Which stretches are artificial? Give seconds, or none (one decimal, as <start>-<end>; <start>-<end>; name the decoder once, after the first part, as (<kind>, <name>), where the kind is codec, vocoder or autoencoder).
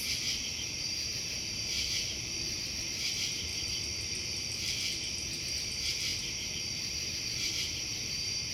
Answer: 0.0-8.5 (vocoder, BigVGAN v2)